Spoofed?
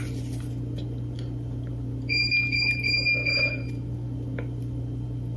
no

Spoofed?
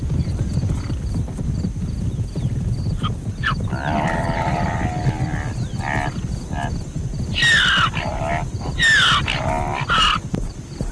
no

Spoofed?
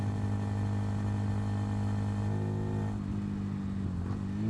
no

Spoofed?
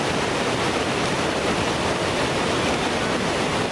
no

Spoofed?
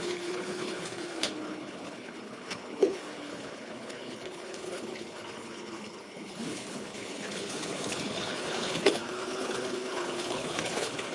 yes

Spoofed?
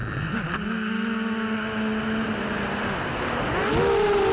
no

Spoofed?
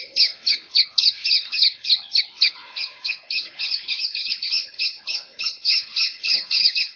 yes